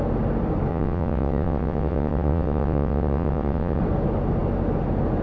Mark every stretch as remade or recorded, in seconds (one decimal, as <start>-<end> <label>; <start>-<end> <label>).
0.0-0.7 recorded; 0.7-3.8 remade; 3.8-5.2 recorded